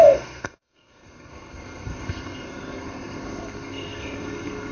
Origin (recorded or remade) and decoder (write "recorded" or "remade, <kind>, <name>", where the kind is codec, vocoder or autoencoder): remade, codec, SNAC